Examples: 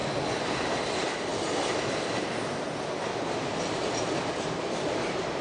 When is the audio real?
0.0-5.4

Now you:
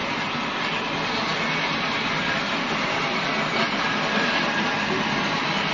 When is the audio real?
0.0-0.6; 1.3-2.3

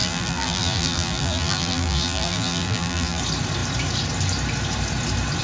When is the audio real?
3.2-5.4

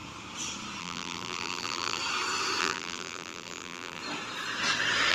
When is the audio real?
0.0-0.8; 2.0-2.6; 4.0-5.1

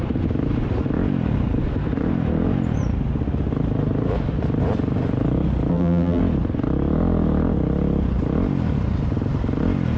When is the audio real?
0.0-5.7; 6.2-10.0

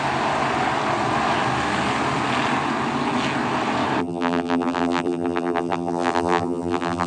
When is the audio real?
0.0-4.0